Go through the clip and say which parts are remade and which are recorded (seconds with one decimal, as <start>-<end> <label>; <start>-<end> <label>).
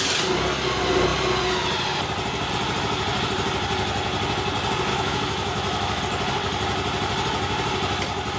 0.0-4.9 recorded; 4.9-6.0 remade; 6.0-8.4 recorded